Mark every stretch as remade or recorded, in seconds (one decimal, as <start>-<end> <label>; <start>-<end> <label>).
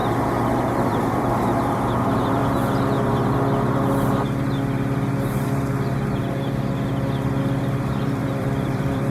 0.0-0.6 recorded; 0.6-2.4 remade; 2.4-7.4 recorded; 7.4-9.1 remade